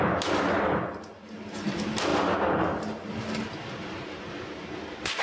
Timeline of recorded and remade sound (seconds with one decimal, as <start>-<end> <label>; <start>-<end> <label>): 0.0-5.2 recorded